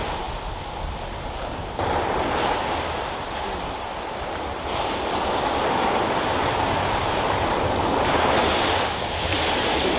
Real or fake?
real